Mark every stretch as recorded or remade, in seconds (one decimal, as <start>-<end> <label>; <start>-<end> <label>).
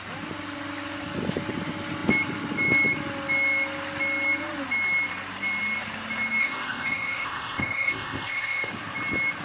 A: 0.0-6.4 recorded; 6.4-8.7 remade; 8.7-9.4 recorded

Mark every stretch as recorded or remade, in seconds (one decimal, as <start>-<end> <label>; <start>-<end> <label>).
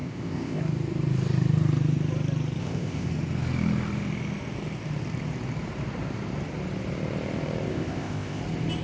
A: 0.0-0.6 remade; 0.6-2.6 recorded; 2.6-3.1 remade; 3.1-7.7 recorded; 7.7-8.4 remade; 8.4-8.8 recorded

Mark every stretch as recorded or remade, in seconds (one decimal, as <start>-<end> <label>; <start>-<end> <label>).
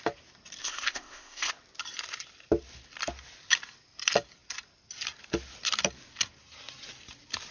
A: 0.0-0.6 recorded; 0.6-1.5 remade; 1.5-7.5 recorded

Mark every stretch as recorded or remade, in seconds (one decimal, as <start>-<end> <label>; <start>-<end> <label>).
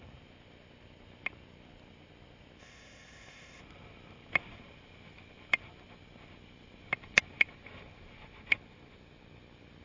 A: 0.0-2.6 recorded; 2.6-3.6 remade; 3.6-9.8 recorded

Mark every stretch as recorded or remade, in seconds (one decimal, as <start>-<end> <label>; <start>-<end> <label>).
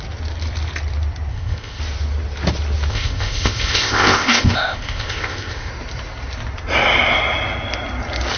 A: 0.0-1.3 recorded; 1.3-1.8 remade; 1.8-2.9 recorded; 2.9-5.7 remade; 5.7-8.4 recorded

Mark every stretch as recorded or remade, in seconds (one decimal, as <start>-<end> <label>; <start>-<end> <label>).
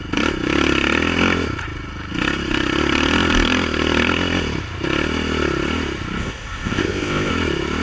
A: 0.0-6.2 recorded; 6.2-7.3 remade; 7.3-7.8 recorded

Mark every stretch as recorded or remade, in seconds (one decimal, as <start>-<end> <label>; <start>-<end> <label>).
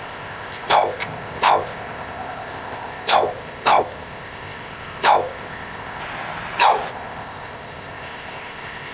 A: 0.0-6.0 remade; 6.0-6.9 recorded; 6.9-8.9 remade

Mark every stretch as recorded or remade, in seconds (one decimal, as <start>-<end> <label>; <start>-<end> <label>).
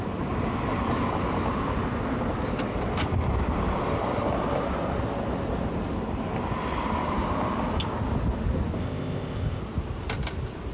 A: 0.0-8.8 recorded; 8.8-9.6 remade; 9.6-10.7 recorded